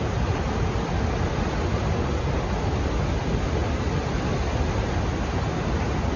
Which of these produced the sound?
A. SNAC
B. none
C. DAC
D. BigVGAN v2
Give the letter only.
B